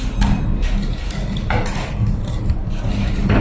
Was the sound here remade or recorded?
recorded